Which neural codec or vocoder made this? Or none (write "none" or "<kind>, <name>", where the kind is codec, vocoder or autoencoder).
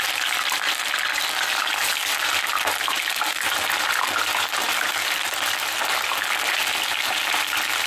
none